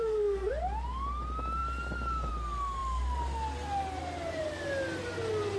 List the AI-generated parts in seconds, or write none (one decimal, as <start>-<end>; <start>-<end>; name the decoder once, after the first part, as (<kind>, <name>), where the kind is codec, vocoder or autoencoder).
0.0-0.5 (codec, SNAC)